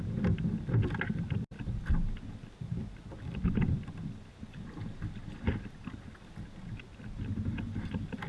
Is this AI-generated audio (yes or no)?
no